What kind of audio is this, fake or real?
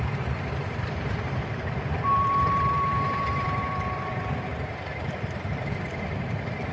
fake